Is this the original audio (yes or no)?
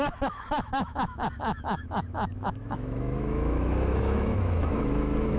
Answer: no